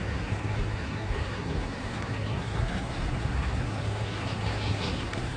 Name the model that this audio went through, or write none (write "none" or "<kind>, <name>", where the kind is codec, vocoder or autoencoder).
codec, SNAC